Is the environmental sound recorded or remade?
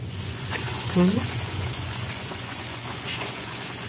remade